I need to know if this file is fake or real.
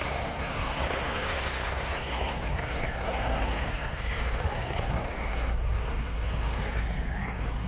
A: fake